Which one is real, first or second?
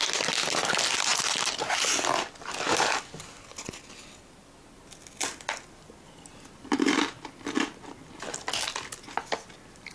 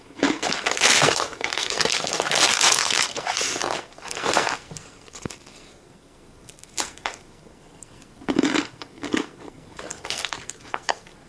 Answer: first